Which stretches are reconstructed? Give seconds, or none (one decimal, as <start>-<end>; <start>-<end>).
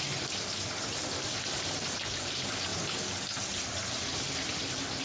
none